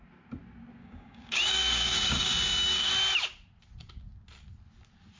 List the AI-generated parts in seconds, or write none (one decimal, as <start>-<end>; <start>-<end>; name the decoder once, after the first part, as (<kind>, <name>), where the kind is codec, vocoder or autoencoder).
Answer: 0.8-2.9 (codec, DAC)